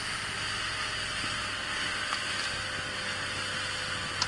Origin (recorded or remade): recorded